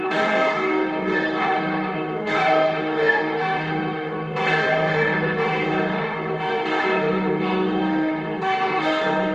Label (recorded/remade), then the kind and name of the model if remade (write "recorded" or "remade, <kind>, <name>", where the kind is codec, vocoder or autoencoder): remade, autoencoder, DAC-VAE